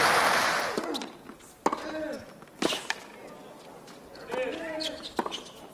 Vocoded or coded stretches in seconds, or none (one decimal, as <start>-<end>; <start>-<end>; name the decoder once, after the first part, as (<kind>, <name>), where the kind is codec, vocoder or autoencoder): none